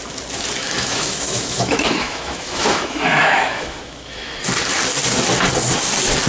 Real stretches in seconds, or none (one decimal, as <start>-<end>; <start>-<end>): 0.0-0.6; 4.4-6.3